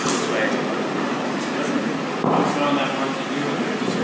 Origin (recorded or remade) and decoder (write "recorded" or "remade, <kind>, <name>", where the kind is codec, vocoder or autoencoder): recorded